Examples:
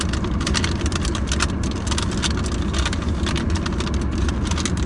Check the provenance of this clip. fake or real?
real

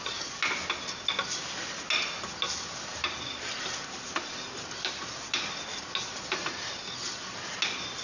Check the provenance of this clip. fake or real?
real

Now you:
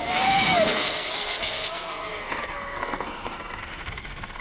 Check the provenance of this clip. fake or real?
fake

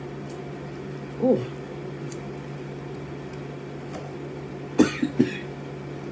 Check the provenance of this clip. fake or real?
real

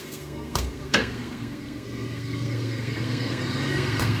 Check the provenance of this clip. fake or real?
fake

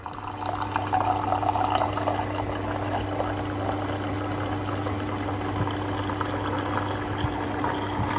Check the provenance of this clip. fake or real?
real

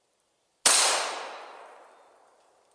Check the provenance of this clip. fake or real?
real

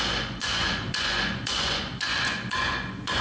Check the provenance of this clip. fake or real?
fake